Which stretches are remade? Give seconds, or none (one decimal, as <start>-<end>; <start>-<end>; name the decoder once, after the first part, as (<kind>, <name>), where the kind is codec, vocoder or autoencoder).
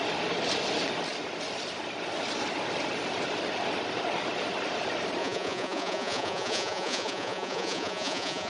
5.2-8.5 (vocoder, Vocos)